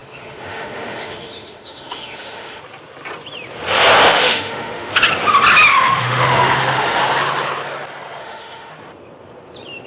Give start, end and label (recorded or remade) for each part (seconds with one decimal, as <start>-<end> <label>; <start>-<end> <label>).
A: 0.0-2.6 remade; 2.6-4.1 recorded; 4.1-4.9 remade; 4.9-5.7 recorded; 5.7-7.0 remade; 7.0-8.2 recorded; 8.2-8.7 remade; 8.7-9.9 recorded